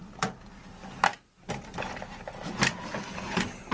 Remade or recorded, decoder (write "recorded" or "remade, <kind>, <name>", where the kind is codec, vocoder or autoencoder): recorded